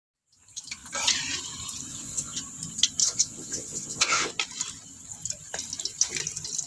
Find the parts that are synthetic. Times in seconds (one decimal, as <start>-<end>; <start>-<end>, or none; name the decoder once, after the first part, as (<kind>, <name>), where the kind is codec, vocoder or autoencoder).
1.9-2.4 (vocoder, WaveNeXt); 3.0-4.3